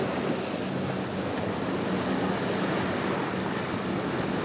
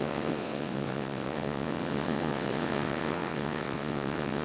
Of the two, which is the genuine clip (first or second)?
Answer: first